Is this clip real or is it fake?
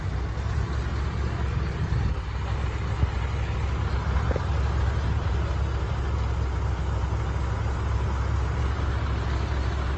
real